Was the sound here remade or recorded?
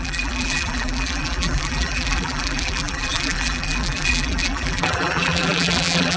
remade